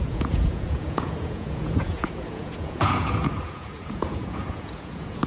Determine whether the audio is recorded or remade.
remade